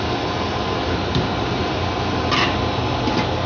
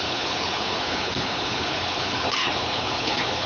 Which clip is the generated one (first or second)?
second